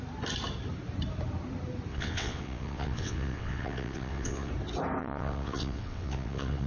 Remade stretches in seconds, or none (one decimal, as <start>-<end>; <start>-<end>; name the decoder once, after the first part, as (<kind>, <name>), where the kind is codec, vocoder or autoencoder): 1.9-4.5 (vocoder, WaveNeXt); 5.0-6.7